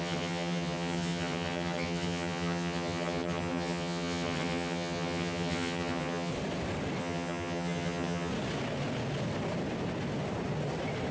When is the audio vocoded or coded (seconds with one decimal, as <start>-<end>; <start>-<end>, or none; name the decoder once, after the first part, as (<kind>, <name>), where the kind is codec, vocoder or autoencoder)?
0.0-6.3 (vocoder, HiFi-GAN); 7.0-8.3